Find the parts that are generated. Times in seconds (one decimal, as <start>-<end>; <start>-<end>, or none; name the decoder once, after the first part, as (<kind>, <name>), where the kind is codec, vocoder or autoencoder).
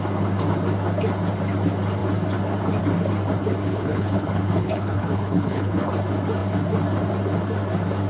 3.7-5.9 (codec, HILCodec)